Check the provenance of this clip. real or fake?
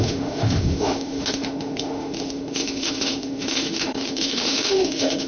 fake